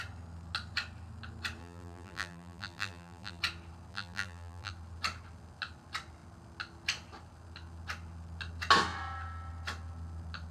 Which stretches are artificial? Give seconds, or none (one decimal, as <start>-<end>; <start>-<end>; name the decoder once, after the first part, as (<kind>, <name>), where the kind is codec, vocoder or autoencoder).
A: 1.6-3.4 (vocoder, BigVGAN v2); 3.9-4.7